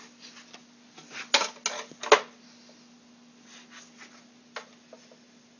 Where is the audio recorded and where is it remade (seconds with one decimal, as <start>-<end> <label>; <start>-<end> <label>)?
0.0-5.6 recorded